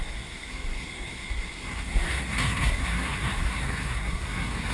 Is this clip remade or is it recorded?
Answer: remade